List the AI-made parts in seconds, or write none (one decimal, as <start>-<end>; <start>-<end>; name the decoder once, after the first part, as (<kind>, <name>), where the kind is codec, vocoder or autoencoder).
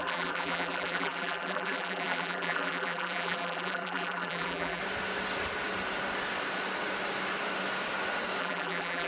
0.0-4.8 (vocoder, BigVGAN v2); 8.4-9.1